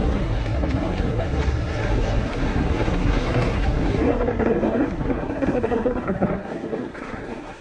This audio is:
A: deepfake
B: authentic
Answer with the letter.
A